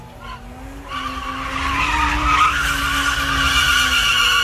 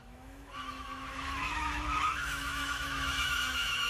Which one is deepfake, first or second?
second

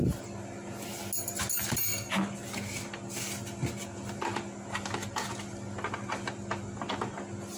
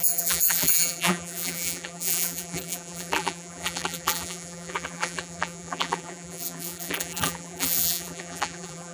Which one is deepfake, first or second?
second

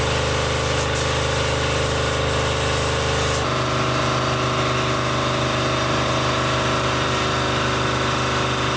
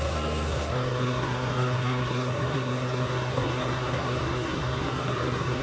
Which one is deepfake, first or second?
second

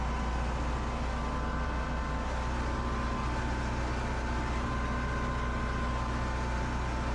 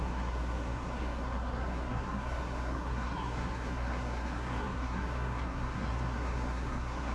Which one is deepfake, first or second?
second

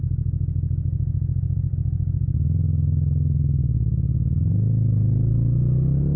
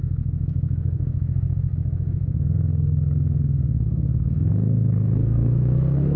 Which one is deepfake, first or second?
second